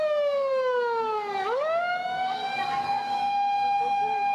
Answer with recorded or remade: remade